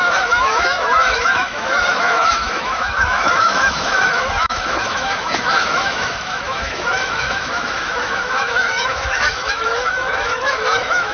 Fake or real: fake